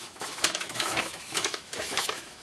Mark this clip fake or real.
fake